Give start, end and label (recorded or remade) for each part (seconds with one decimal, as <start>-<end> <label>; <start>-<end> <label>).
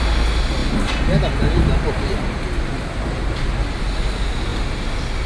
0.0-5.3 recorded